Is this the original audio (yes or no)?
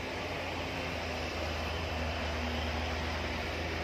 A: no